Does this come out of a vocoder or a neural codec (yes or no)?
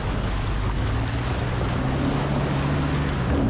no